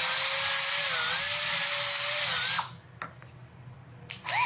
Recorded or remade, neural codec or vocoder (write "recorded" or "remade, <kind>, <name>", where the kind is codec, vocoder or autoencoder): recorded